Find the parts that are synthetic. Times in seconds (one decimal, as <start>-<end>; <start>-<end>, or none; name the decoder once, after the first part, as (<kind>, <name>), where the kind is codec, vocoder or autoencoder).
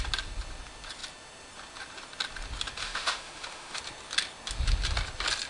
2.8-3.8 (autoencoder, DAC-VAE)